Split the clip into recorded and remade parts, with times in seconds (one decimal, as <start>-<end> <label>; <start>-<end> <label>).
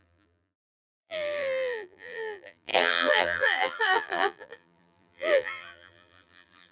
0.0-6.7 remade